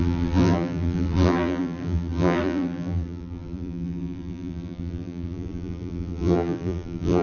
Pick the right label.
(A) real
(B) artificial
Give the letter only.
B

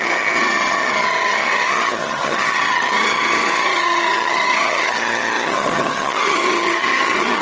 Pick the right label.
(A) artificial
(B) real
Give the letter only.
A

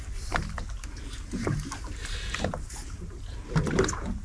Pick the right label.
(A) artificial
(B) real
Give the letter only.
B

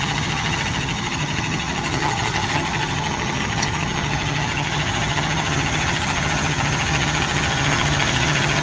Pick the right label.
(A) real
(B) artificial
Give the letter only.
B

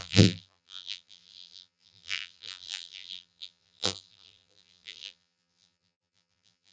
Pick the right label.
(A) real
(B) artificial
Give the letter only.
B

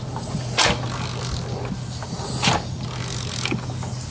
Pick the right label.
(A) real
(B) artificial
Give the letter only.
A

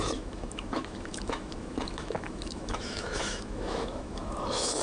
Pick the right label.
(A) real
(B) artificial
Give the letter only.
B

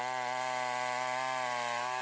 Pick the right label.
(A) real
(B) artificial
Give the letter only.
A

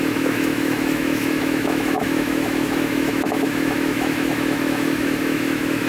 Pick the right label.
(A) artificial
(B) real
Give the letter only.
A